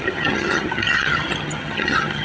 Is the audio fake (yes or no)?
yes